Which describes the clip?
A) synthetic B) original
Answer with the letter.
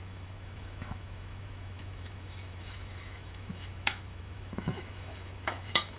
A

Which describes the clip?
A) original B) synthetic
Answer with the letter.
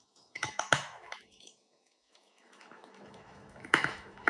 B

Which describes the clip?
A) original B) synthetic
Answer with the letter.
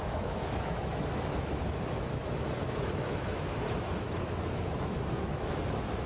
B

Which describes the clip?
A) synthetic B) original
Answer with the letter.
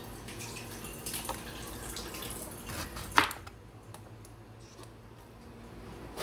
B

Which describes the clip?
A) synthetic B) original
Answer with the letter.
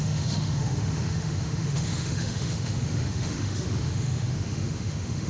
A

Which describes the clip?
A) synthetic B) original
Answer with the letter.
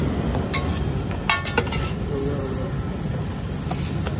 B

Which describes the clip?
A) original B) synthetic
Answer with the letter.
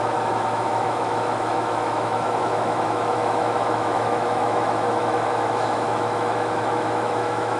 B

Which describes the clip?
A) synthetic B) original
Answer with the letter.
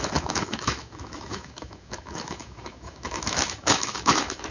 A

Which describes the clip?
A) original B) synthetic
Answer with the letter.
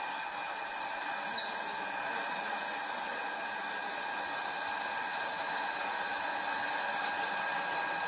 A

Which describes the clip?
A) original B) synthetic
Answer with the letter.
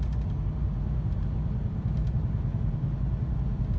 A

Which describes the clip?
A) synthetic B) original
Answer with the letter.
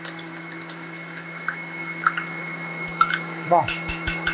A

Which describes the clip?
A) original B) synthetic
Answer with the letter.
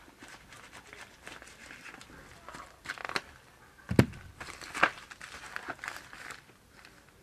A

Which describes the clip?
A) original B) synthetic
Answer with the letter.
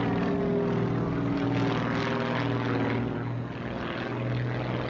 A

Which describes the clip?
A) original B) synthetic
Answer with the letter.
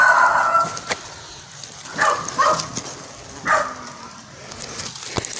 A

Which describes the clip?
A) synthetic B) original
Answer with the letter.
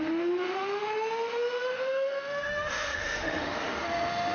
A